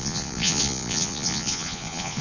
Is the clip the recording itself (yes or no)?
no